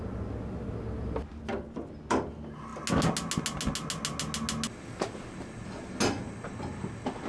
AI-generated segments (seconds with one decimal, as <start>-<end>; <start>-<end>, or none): none